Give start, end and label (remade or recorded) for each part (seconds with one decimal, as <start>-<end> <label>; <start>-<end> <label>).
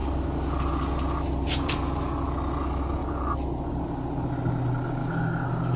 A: 0.0-5.0 recorded; 5.0-5.8 remade